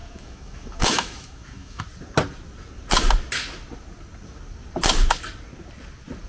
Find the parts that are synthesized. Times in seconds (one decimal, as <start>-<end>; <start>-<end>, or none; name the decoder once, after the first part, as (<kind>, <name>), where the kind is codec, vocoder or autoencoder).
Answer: 0.0-1.8 (autoencoder, DAC-VAE)